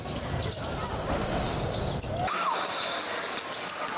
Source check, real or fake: real